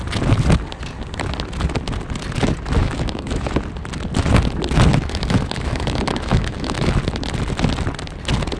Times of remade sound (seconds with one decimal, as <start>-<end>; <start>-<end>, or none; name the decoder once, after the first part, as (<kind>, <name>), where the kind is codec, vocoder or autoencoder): 2.8-3.5 (autoencoder, DAC-VAE); 4.9-7.0